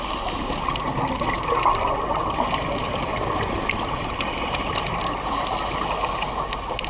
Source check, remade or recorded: recorded